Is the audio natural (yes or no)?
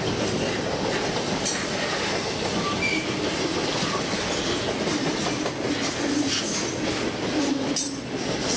yes